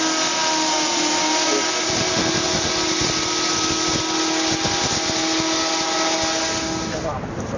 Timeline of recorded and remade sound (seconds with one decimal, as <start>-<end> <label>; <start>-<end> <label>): 0.0-7.6 recorded